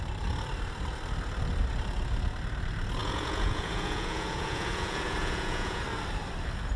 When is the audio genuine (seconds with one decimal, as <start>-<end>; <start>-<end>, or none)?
0.0-3.0; 5.8-6.8